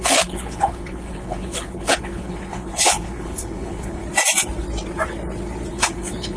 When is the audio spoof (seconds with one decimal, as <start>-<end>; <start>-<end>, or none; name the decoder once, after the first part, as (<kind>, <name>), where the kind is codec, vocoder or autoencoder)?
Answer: 0.0-4.0 (codec, HILCodec); 5.7-6.4